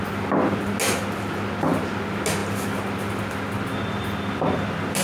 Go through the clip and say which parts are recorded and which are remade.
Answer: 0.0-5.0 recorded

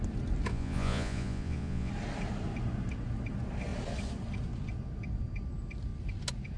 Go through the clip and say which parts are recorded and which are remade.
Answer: 0.0-0.5 recorded; 0.5-1.9 remade; 1.9-6.6 recorded

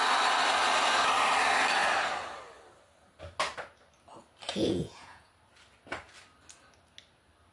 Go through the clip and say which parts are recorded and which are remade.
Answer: 0.0-4.5 recorded; 4.5-5.3 remade; 5.3-7.5 recorded

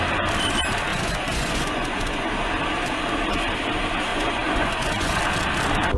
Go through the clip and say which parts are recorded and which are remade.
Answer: 0.0-0.9 recorded; 0.9-2.3 remade; 2.3-4.1 recorded; 4.1-5.2 remade; 5.2-6.0 recorded